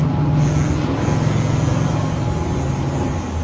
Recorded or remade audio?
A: recorded